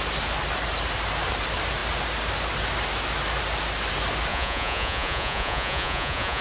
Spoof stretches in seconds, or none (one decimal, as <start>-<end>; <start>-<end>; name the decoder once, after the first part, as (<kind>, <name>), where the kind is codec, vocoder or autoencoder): 4.3-6.4 (vocoder, Vocos)

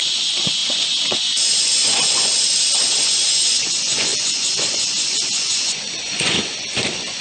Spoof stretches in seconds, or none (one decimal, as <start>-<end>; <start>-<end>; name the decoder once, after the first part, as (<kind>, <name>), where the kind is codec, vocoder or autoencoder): 0.0-2.3 (vocoder, Vocos); 3.0-7.2

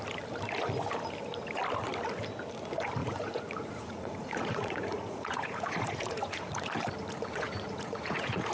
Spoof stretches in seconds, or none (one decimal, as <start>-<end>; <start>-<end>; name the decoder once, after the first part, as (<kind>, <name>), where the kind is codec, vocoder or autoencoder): 3.0-6.7 (vocoder, Vocos); 7.3-8.5